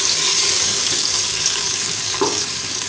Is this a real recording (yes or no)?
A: no